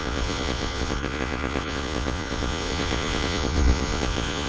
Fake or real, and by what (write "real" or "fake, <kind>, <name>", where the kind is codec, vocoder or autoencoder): fake, vocoder, Vocos